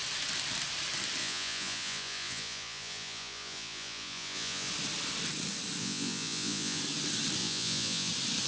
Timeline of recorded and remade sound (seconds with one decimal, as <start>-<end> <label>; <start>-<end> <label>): 0.0-1.2 recorded; 1.2-4.7 remade; 4.7-5.8 recorded; 5.8-6.8 remade; 6.8-7.4 recorded; 7.4-8.1 remade; 8.1-8.5 recorded